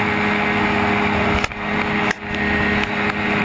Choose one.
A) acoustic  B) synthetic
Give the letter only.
A